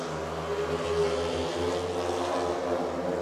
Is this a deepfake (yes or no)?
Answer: no